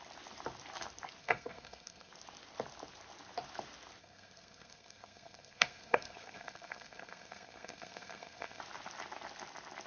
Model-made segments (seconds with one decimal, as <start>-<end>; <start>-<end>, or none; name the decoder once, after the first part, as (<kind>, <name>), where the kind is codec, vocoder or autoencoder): 1.2-2.1 (codec, SNAC); 4.0-8.6